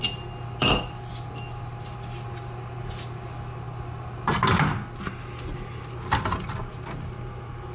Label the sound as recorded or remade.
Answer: recorded